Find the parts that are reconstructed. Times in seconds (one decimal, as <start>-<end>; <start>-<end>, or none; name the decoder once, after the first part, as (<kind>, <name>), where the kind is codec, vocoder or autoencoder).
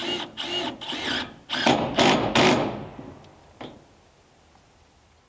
none